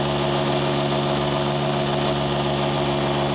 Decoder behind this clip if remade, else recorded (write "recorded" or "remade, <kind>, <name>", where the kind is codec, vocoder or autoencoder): recorded